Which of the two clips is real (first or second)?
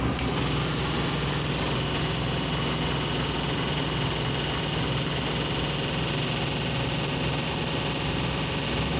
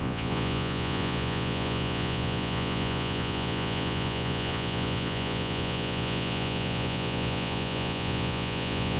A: first